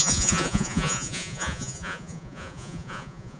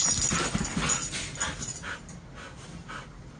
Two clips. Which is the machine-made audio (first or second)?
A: first